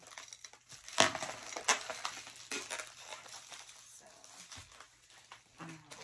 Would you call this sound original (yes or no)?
yes